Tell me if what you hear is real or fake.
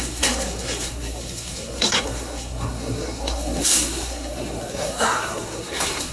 fake